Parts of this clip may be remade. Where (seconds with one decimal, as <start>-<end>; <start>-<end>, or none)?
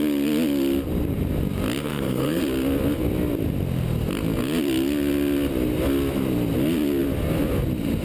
1.9-2.4